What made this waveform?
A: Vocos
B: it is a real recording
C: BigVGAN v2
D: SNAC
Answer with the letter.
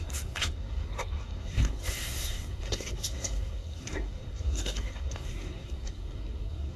D